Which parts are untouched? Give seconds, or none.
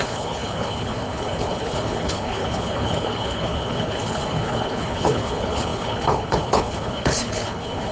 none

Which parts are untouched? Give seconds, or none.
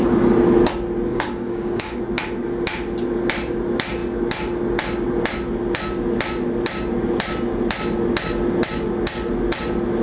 0.0-1.1; 2.0-10.0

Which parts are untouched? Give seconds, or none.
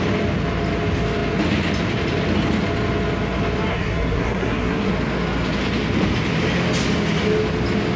0.0-3.7; 4.9-8.0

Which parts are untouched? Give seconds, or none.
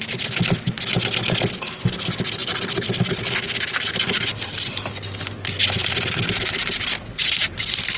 0.0-8.0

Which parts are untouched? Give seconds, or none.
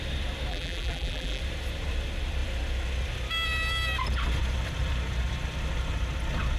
0.0-0.5; 1.4-6.6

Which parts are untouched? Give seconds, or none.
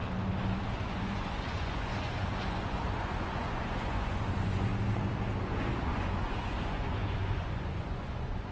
0.0-0.6; 4.7-5.4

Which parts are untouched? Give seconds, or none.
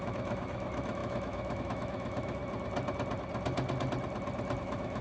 2.4-4.6